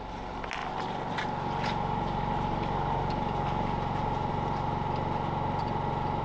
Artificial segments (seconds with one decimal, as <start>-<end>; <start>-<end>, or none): none